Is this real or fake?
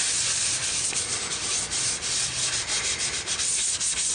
real